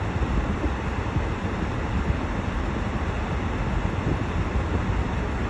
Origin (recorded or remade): recorded